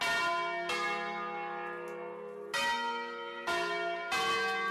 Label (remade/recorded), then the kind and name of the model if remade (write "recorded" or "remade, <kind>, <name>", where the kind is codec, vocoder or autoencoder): recorded